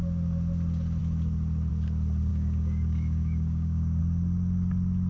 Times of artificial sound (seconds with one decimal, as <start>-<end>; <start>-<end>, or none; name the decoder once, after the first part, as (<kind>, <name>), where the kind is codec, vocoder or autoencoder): 2.3-4.0 (codec, DAC)